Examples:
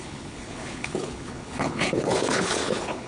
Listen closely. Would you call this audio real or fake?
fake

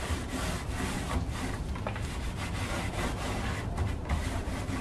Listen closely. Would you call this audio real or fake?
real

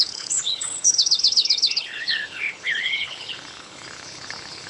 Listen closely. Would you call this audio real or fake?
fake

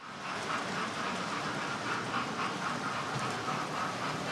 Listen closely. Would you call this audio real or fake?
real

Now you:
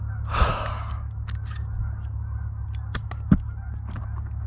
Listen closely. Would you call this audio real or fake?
real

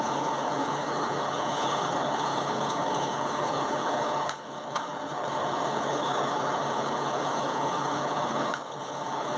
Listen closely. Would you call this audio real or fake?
fake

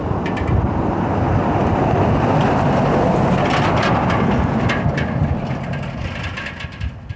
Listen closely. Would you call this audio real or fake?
real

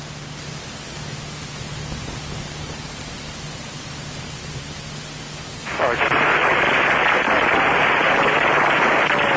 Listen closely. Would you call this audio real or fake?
real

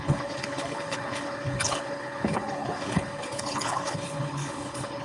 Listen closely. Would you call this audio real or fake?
fake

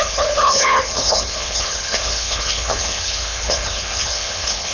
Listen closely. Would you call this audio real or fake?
fake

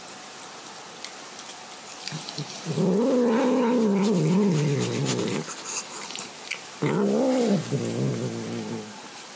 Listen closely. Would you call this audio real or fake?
real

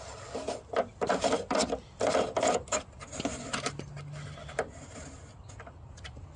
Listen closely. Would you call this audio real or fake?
real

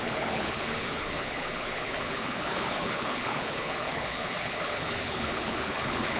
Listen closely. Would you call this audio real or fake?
fake